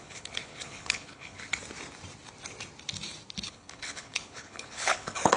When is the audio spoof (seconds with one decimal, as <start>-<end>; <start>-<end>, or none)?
0.0-1.5; 3.5-5.4